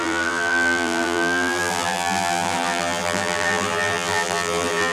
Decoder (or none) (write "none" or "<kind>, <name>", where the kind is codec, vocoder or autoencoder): vocoder, BigVGAN v2